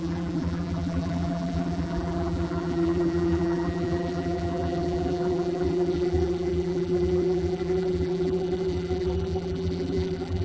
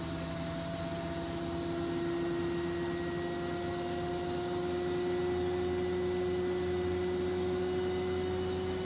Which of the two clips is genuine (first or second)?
second